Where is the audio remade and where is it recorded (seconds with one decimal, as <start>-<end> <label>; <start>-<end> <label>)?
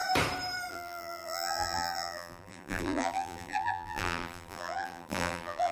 0.0-0.7 recorded; 0.7-5.7 remade